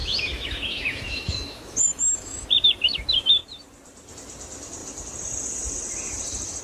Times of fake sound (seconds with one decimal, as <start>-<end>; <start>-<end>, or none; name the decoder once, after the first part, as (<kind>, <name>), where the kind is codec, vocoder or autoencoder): 0.0-2.5 (autoencoder, DAC-VAE)